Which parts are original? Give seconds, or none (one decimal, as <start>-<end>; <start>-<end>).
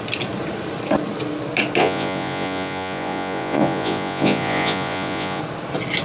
0.0-1.8; 5.4-6.0